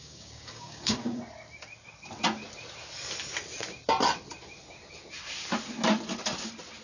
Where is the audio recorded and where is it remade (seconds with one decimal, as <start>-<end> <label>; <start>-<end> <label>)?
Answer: 0.0-1.2 remade; 1.2-6.8 recorded